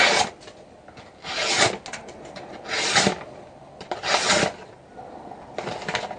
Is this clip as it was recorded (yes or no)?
yes